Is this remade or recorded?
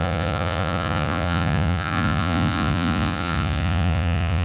remade